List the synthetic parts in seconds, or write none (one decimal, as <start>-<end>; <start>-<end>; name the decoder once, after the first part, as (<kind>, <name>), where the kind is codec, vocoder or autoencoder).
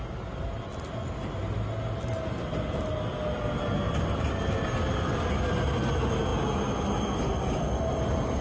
none